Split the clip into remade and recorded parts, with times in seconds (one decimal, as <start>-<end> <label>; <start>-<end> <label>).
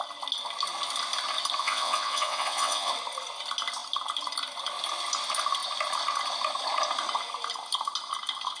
0.0-1.6 recorded; 1.6-2.9 remade; 2.9-8.6 recorded